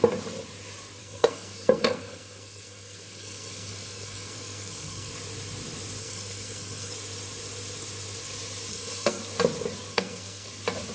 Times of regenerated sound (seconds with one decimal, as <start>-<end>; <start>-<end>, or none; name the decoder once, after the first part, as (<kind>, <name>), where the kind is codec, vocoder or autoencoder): 1.0-5.1 (codec, SNAC); 6.0-6.9; 8.7-9.2; 9.9-10.5